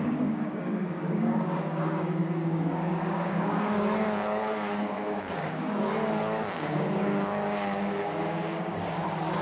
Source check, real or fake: fake